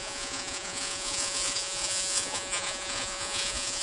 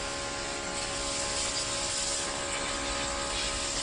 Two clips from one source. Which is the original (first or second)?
second